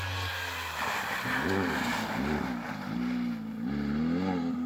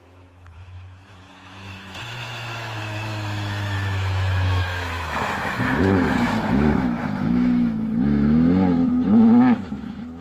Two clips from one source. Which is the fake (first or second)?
second